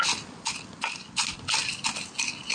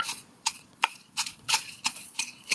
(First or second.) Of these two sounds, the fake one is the second